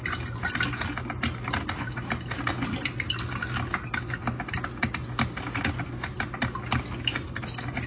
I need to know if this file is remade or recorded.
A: recorded